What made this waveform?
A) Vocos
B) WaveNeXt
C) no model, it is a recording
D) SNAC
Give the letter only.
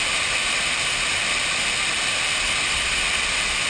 C